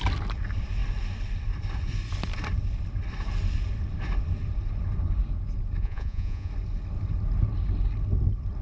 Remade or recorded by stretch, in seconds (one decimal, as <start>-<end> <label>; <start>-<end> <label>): 0.0-5.8 recorded; 5.8-6.5 remade; 6.5-8.6 recorded